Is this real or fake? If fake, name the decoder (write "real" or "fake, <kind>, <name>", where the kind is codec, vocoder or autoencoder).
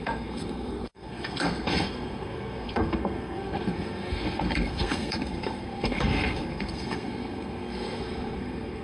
fake, codec, SNAC